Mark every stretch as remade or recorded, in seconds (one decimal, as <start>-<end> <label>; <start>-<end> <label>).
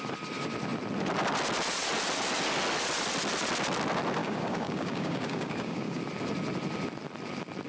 0.0-4.2 recorded; 4.2-6.0 remade; 6.0-7.7 recorded